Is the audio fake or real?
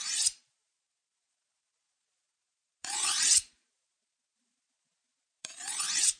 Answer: fake